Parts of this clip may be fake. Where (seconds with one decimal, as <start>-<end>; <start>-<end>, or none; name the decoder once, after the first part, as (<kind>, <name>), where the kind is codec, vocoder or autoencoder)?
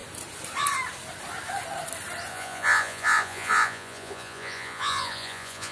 2.3-5.7 (vocoder, Vocos)